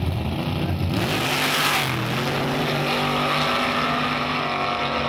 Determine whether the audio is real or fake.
real